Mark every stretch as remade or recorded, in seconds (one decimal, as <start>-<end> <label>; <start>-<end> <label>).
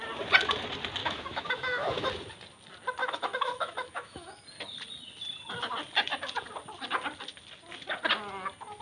0.0-1.0 recorded; 1.0-2.1 remade; 2.1-3.0 recorded; 3.0-4.4 remade; 4.4-8.8 recorded